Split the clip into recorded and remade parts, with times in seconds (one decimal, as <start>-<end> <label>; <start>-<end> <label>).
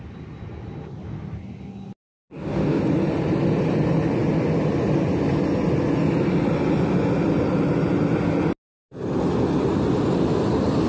0.0-2.3 recorded; 2.3-2.8 remade; 2.8-10.9 recorded